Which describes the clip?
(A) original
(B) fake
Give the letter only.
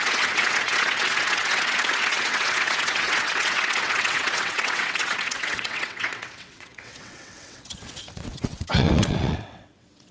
B